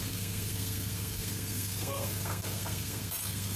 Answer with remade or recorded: remade